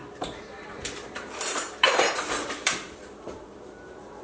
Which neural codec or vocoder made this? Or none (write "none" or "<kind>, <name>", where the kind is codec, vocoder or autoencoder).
vocoder, BigVGAN v2